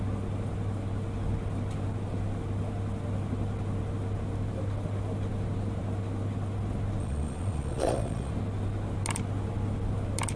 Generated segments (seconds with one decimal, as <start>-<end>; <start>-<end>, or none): 7.0-8.3